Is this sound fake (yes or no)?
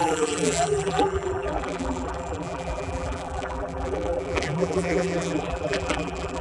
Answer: yes